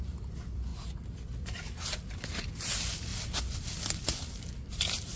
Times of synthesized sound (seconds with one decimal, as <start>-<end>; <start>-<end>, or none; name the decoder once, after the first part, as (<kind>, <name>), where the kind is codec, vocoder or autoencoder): 0.0-0.7 (vocoder, BigVGAN v2); 2.5-5.2